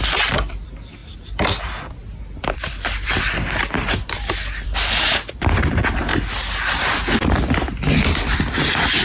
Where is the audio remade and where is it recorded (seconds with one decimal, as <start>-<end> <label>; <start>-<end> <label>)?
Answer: 0.0-1.0 remade; 1.0-1.9 recorded; 1.9-6.1 remade; 6.1-7.9 recorded; 7.9-9.0 remade

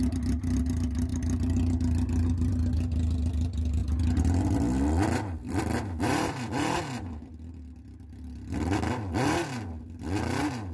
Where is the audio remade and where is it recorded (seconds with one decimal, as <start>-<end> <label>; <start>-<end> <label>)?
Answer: 0.0-3.8 recorded; 3.8-6.8 remade; 6.8-10.7 recorded

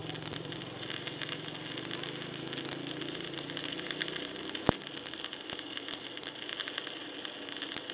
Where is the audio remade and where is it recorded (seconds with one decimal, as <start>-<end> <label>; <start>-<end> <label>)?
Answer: 0.0-1.0 remade; 1.0-7.9 recorded

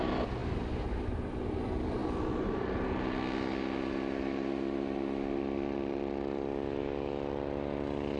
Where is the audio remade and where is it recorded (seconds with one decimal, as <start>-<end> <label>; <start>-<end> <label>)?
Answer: 0.0-8.2 recorded

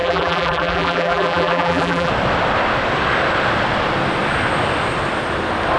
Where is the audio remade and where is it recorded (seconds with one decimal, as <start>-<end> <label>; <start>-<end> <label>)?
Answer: 0.0-2.1 remade; 2.1-5.8 recorded

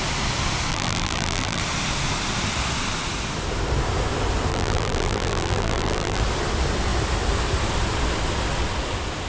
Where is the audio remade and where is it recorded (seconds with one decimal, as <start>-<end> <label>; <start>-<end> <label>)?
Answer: 0.0-0.7 recorded; 0.7-1.6 remade; 1.6-4.5 recorded; 4.5-6.2 remade; 6.2-9.3 recorded

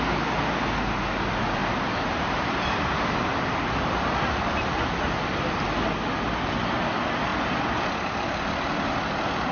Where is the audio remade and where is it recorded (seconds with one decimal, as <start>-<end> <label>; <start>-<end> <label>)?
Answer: 0.0-1.6 recorded; 1.6-3.0 remade; 3.0-9.5 recorded